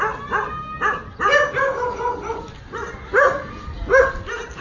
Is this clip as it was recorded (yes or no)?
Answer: yes